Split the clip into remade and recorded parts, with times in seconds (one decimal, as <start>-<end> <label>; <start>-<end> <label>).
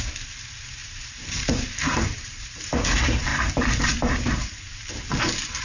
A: 0.0-0.8 recorded; 0.8-2.7 remade; 2.7-3.3 recorded; 3.3-4.9 remade; 4.9-5.6 recorded